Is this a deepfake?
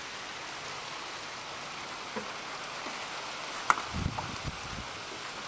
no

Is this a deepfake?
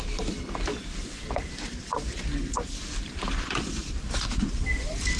yes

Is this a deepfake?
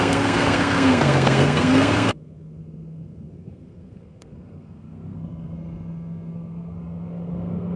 yes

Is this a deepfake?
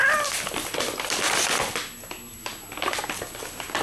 no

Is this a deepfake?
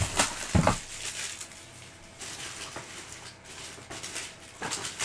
no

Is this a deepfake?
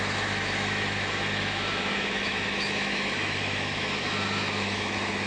yes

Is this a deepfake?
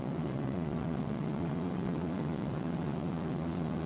yes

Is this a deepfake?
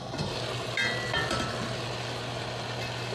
no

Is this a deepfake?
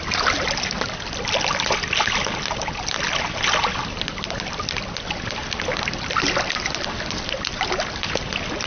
no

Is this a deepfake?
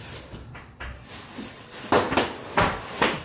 no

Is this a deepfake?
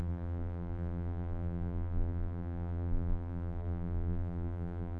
yes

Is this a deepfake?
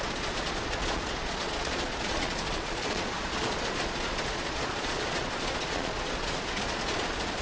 yes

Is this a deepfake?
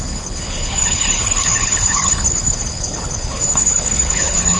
yes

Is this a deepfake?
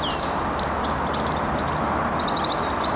yes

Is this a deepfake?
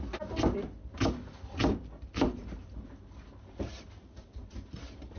no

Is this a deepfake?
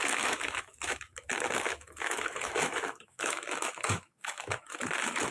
yes